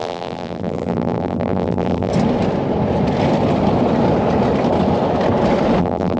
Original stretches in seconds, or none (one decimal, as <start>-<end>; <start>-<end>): 2.1-5.8